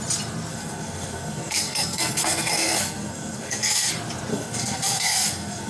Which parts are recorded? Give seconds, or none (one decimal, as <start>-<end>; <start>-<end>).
0.0-0.5; 3.9-4.3